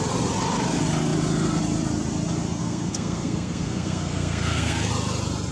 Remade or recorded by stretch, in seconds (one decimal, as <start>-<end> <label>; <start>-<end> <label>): 0.0-2.6 recorded; 2.6-4.9 remade; 4.9-5.5 recorded